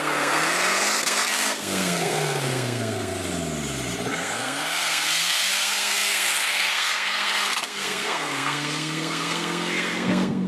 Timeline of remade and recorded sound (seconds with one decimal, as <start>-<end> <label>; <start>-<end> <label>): 0.0-3.1 remade; 3.1-4.1 recorded; 4.1-10.5 remade